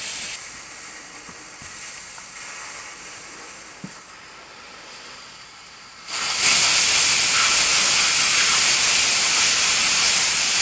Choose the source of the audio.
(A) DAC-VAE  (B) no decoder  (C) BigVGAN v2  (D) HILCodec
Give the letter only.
B